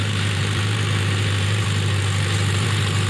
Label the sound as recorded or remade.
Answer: remade